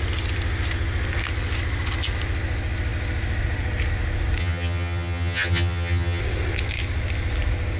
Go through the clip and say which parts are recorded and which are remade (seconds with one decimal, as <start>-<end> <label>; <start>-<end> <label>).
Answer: 0.0-4.4 recorded; 4.4-6.2 remade; 6.2-7.8 recorded